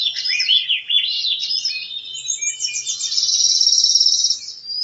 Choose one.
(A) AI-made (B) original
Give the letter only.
B